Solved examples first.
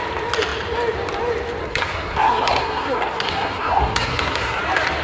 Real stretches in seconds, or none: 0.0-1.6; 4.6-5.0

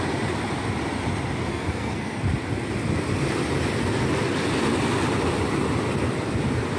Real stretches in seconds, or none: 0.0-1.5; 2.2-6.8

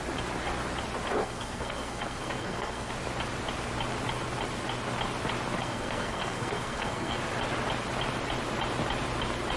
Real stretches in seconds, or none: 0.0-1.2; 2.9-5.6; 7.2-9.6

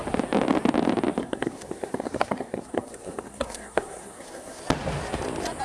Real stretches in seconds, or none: 0.0-1.2; 4.6-5.6